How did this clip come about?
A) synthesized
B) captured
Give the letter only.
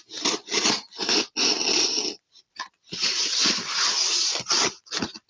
A